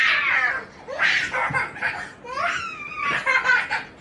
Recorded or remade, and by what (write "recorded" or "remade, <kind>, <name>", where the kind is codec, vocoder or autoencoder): recorded